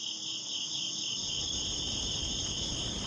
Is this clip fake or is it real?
real